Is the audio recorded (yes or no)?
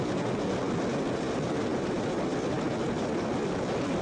yes